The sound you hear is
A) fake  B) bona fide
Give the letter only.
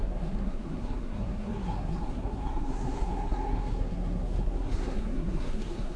A